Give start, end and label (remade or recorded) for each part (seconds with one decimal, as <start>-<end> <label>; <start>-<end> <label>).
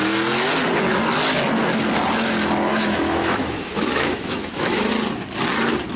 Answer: 0.0-2.7 recorded; 2.7-4.9 remade; 4.9-6.0 recorded